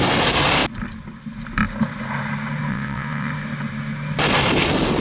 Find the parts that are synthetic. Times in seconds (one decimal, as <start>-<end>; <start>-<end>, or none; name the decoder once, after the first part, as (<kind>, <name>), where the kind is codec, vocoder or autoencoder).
2.7-3.3 (vocoder, WaveNeXt)